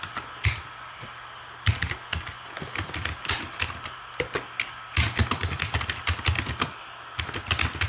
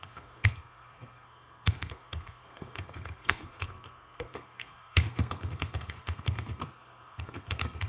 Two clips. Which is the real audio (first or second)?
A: first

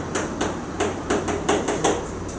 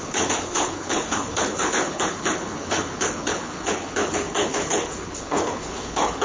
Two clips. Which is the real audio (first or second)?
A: first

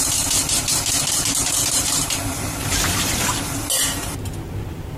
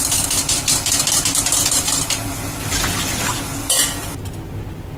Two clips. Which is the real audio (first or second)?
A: second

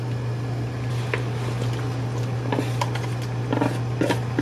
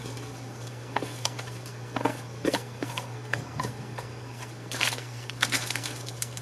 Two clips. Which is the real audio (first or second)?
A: first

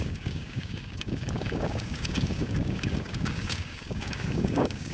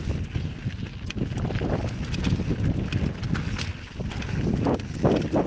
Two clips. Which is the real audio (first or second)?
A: second